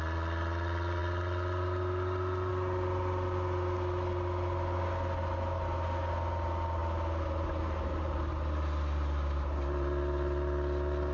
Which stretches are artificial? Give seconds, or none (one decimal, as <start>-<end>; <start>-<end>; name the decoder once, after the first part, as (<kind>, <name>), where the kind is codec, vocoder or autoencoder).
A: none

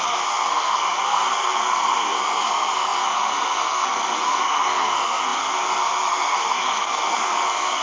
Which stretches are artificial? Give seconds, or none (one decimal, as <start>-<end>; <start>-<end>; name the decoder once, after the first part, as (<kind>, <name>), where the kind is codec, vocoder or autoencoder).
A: 0.0-7.8 (codec, SNAC)

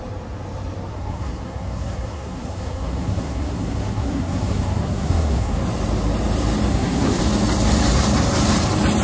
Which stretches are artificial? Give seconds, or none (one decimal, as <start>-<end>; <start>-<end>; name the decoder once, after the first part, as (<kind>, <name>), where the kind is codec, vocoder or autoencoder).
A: 0.9-5.6 (codec, SNAC); 6.7-7.2

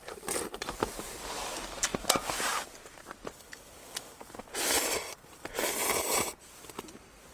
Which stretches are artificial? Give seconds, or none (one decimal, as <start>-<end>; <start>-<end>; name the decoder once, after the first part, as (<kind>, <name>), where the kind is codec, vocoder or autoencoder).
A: none

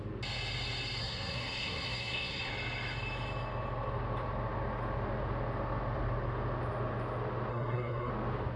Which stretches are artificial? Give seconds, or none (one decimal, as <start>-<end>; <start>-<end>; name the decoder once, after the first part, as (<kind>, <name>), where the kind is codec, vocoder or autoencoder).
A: 1.0-2.5 (codec, SNAC); 7.5-8.1